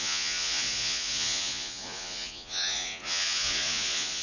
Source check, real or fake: fake